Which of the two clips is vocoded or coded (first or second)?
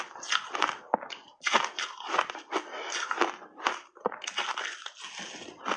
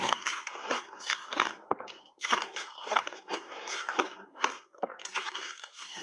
second